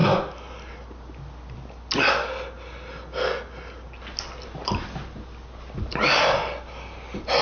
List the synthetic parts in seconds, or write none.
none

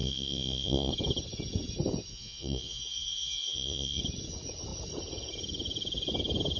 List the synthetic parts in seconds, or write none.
0.0-0.9 (vocoder, Vocos); 2.1-4.0

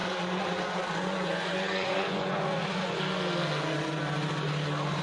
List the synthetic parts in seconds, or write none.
0.0-3.0 (vocoder, Vocos)

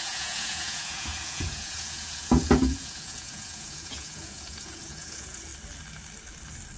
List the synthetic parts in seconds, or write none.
0.0-5.5 (vocoder, Vocos)